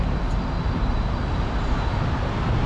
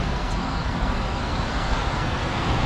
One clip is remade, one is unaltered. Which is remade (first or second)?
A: second